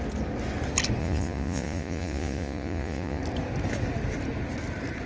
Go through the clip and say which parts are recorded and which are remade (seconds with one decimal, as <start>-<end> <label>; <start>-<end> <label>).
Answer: 0.0-1.0 recorded; 1.0-3.2 remade; 3.2-5.1 recorded